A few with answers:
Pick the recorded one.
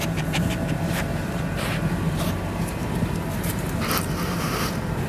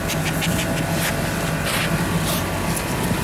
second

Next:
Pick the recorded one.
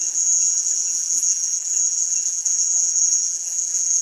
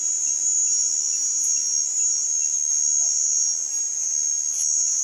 second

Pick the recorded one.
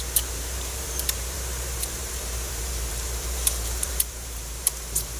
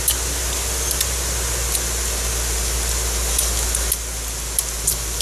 second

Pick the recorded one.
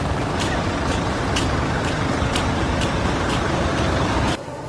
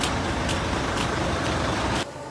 second